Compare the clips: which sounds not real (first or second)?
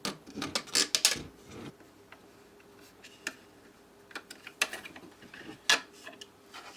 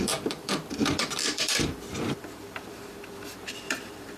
second